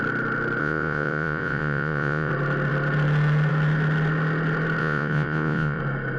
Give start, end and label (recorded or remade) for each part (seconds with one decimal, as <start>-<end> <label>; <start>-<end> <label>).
0.0-0.6 recorded; 0.6-2.3 remade; 2.3-4.8 recorded; 4.8-5.8 remade; 5.8-6.2 recorded